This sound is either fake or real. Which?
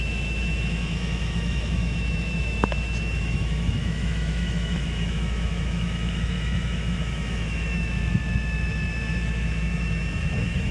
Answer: fake